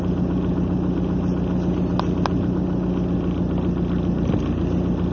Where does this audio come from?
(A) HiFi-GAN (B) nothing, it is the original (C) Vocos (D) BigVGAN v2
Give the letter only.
B